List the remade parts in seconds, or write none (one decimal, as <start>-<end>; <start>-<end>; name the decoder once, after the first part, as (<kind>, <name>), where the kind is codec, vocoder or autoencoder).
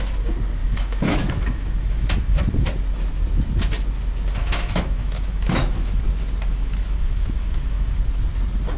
0.6-2.4 (autoencoder, DAC-VAE); 4.4-6.0; 6.5-8.0